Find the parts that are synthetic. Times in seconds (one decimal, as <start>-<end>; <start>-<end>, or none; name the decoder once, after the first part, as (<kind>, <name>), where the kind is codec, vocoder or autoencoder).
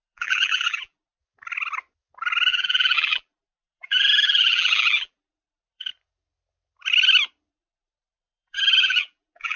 0.0-1.2 (vocoder, BigVGAN v2); 2.5-5.9; 7.5-9.6